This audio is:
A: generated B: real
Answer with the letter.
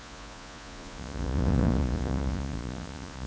A